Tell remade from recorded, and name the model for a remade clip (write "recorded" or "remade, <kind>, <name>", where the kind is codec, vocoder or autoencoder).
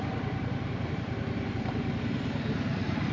recorded